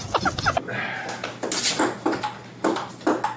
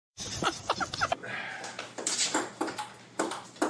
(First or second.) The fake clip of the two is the second